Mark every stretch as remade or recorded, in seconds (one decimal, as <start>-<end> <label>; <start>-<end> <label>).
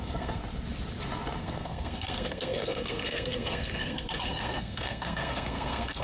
0.0-0.4 remade; 0.4-1.4 recorded; 1.4-6.0 remade